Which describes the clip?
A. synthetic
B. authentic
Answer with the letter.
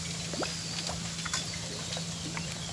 B